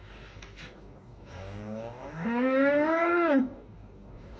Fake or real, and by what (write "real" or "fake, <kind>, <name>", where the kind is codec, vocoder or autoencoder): fake, codec, DAC